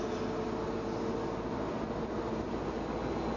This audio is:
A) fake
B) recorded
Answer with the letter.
B